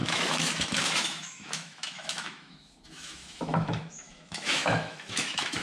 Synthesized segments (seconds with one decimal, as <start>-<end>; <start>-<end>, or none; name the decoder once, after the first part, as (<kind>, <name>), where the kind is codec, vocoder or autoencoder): 0.0-5.6 (autoencoder, DAC-VAE)